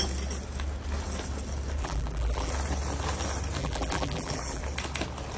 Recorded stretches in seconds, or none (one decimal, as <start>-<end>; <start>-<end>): 0.0-1.8; 2.5-3.6; 4.6-5.4

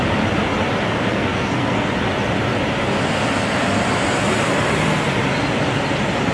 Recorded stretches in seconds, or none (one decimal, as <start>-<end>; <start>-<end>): 0.0-1.1; 1.9-6.3

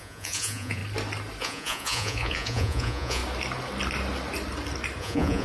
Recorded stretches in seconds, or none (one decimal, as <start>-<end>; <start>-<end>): 0.8-1.4; 3.2-5.0

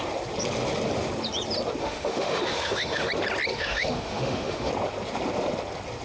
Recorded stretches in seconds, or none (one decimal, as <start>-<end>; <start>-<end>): 0.0-1.8; 3.1-3.5; 4.7-6.0

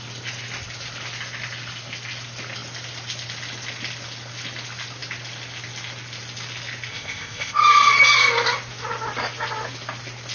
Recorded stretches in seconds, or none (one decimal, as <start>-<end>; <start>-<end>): 0.0-6.9; 7.6-10.3

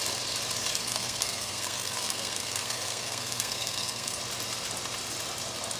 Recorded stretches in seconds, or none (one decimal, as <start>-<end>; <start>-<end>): 0.0-0.7; 4.2-5.8